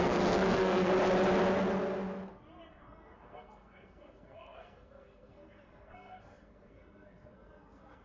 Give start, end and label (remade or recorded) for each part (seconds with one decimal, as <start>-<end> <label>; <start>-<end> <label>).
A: 0.0-0.9 remade; 0.9-2.7 recorded; 2.7-8.0 remade

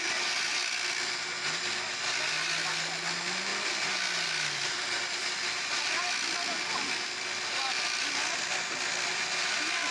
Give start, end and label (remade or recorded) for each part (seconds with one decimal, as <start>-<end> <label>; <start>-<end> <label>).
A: 0.0-9.9 recorded

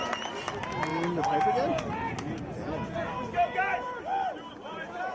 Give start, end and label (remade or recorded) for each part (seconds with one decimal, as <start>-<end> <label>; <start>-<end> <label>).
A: 0.0-5.1 recorded

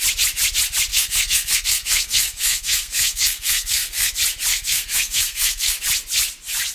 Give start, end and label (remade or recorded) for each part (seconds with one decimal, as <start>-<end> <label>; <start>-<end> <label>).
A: 0.0-0.9 recorded; 0.9-4.1 remade; 4.1-4.5 recorded; 4.5-5.8 remade; 5.8-6.7 recorded

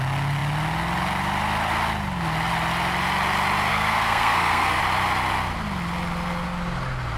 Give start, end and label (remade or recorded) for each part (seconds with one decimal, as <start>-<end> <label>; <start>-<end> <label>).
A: 0.0-3.7 recorded; 3.7-4.8 remade; 4.8-7.2 recorded